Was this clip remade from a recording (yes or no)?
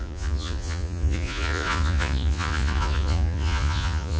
yes